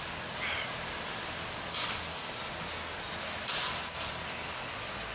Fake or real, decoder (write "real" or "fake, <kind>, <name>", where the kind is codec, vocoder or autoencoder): real